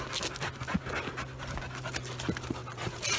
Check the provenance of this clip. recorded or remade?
recorded